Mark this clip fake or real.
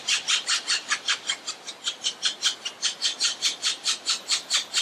real